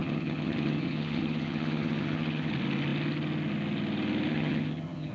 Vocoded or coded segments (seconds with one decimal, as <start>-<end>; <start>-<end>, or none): 0.0-2.5; 4.3-5.1